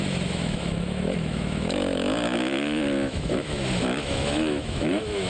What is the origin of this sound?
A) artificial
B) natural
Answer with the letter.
A